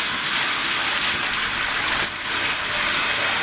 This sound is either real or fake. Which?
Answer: real